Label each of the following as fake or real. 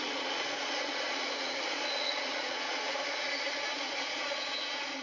fake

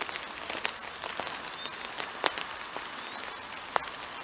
real